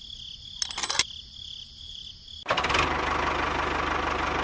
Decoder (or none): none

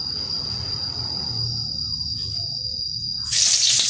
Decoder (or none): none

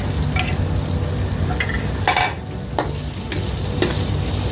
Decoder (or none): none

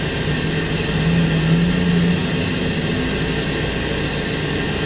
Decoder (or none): none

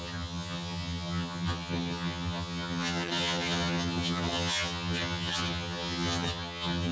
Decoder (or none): vocoder, HiFi-GAN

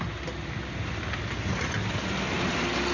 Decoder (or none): none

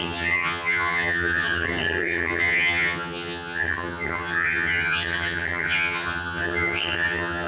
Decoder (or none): vocoder, HiFi-GAN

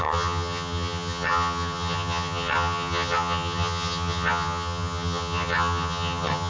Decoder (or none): vocoder, HiFi-GAN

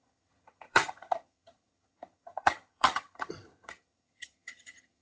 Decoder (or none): vocoder, HiFi-GAN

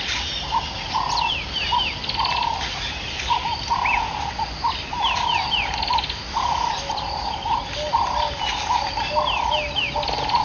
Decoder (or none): none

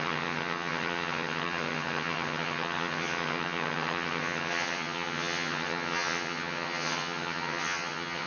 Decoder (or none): vocoder, HiFi-GAN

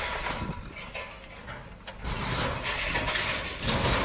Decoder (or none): none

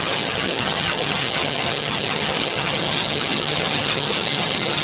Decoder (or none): vocoder, HiFi-GAN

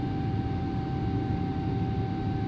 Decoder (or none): none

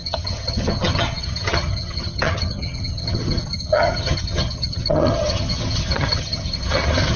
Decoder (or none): vocoder, HiFi-GAN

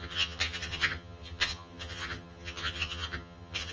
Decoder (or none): vocoder, HiFi-GAN